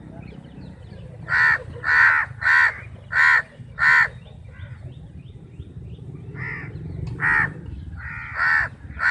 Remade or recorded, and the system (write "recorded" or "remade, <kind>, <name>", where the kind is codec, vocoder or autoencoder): recorded